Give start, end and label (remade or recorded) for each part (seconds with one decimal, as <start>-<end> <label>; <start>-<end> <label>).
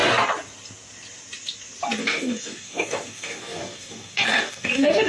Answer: 0.0-2.0 recorded; 2.0-5.1 remade